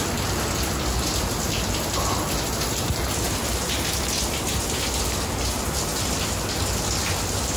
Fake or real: real